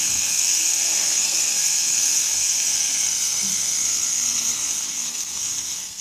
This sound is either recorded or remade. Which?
remade